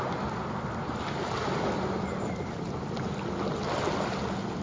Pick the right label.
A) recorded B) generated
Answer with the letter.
A